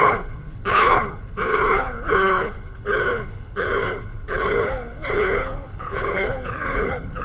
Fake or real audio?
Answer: fake